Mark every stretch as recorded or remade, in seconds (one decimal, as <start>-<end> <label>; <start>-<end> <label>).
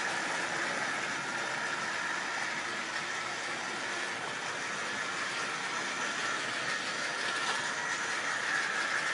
0.0-9.1 recorded